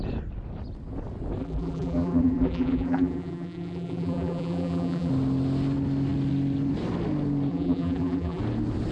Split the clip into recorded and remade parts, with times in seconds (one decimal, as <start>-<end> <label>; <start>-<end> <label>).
0.0-1.4 recorded; 1.4-5.1 remade; 5.1-7.5 recorded; 7.5-8.4 remade; 8.4-8.9 recorded